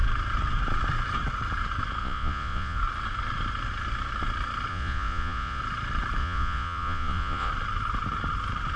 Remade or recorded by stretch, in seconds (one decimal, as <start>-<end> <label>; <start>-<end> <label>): 0.0-2.0 recorded; 2.0-2.8 remade; 2.8-4.7 recorded; 4.7-5.6 remade; 5.6-6.2 recorded; 6.2-7.5 remade; 7.5-8.8 recorded